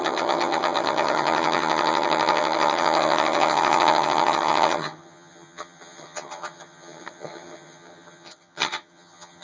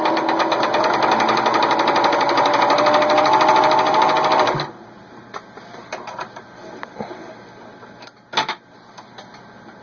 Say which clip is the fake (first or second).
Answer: first